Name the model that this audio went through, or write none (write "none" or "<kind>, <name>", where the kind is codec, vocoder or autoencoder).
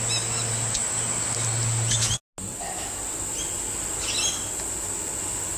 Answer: none